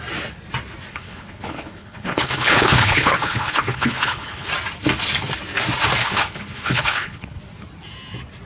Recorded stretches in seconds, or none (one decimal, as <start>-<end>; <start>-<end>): 0.0-0.9; 4.5-6.0; 7.4-8.5